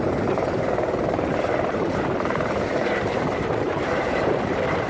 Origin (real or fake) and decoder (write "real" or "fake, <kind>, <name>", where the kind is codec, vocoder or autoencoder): fake, vocoder, BigVGAN v2